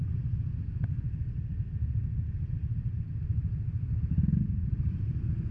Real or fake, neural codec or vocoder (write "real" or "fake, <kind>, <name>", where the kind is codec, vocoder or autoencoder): real